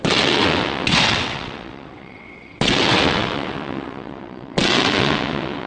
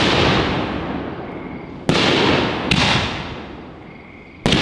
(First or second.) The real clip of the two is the second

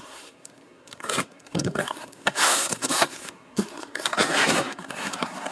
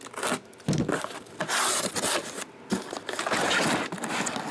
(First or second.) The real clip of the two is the second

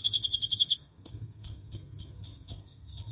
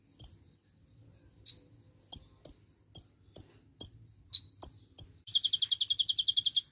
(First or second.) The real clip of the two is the second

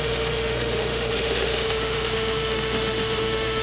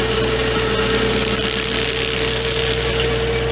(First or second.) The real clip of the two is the second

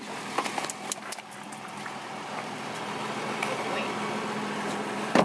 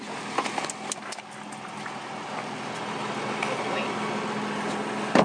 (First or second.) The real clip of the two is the second